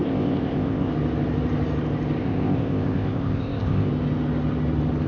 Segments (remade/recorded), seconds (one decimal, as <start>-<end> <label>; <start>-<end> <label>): 0.0-0.9 remade; 0.9-2.2 recorded; 2.2-3.9 remade; 3.9-5.1 recorded